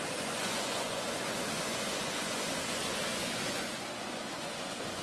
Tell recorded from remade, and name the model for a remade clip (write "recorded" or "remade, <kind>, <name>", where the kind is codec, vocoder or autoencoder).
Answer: remade, vocoder, Vocos